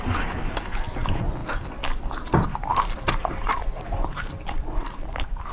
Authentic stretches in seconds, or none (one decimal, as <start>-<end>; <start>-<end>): 0.0-2.7